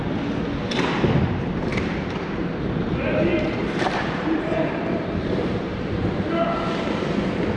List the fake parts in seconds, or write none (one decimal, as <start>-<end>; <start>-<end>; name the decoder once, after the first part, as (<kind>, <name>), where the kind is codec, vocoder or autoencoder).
3.3-5.9 (vocoder, BigVGAN v2)